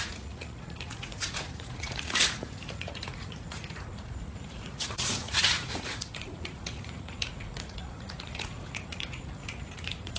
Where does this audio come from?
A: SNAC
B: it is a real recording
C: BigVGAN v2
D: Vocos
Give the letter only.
D